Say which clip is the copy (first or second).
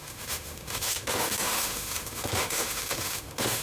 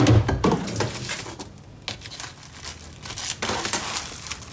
first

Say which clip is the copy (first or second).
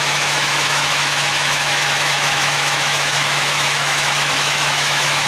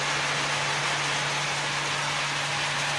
first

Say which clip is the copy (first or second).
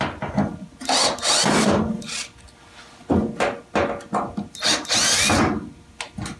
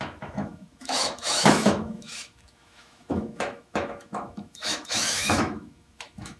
second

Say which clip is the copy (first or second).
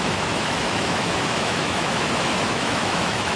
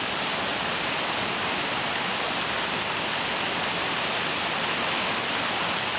first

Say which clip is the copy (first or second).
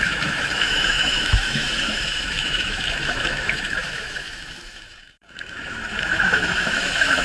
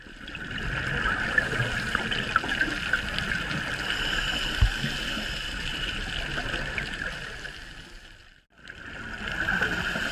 first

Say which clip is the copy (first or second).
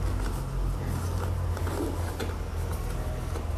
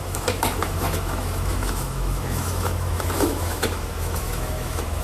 second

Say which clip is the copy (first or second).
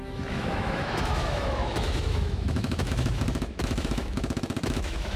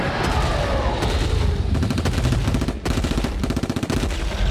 first